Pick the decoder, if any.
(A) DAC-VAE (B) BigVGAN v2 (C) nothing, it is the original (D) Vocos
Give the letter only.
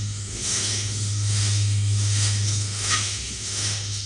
A